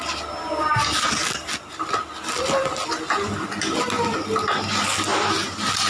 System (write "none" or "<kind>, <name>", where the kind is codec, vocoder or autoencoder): none